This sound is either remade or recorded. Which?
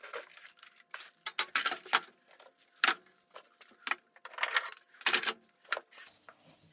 recorded